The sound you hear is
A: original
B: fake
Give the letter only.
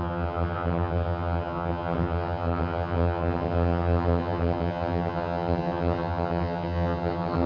B